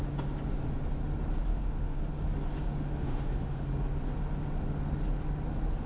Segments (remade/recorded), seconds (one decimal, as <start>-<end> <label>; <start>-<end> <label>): 0.0-1.5 recorded; 1.5-2.0 remade; 2.0-3.0 recorded; 3.0-3.6 remade; 3.6-5.9 recorded